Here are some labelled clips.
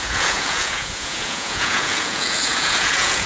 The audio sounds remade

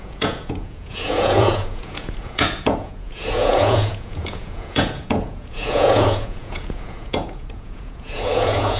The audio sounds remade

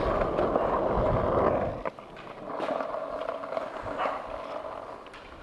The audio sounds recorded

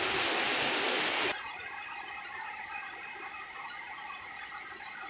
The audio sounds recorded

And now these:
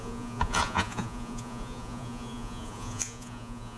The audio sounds remade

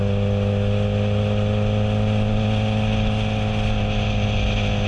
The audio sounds recorded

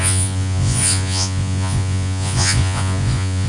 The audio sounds remade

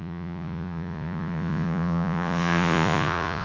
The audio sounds remade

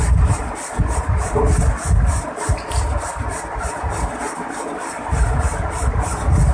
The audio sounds recorded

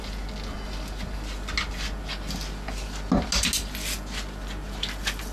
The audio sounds recorded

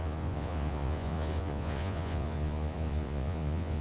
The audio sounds remade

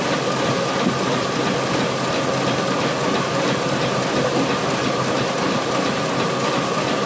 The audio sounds recorded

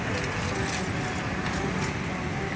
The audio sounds recorded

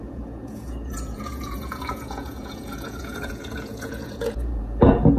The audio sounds remade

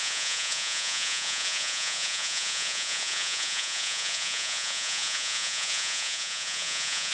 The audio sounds remade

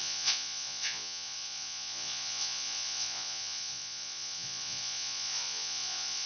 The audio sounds remade